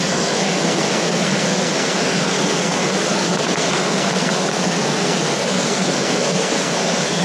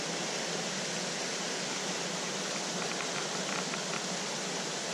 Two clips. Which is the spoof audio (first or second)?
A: first